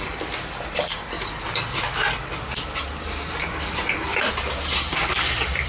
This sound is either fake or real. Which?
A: fake